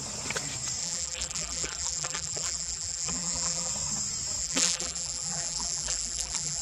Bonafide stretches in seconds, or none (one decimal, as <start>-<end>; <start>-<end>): 0.0-0.8; 3.7-4.4